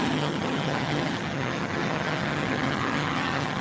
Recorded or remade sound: remade